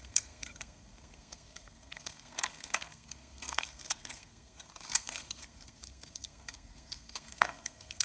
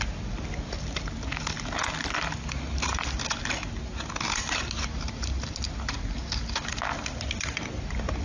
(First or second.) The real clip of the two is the second